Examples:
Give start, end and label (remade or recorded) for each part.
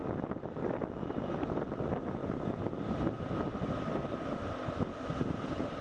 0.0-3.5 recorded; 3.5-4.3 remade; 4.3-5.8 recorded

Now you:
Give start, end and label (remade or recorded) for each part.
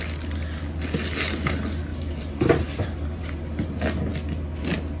0.0-1.9 recorded; 1.9-3.2 remade; 3.2-5.0 recorded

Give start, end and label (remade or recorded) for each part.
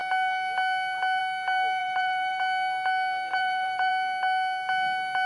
0.0-1.8 recorded; 1.8-2.4 remade; 2.4-3.3 recorded; 3.3-3.9 remade; 3.9-5.3 recorded